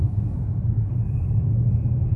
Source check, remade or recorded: remade